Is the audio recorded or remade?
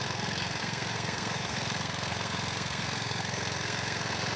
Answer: remade